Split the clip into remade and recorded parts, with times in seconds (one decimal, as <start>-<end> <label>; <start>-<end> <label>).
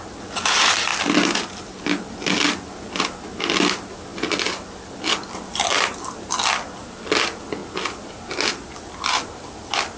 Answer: 0.0-10.0 recorded